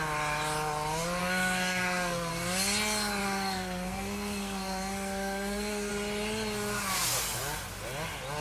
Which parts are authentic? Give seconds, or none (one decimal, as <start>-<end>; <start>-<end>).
0.0-1.2; 2.3-3.2; 5.9-8.4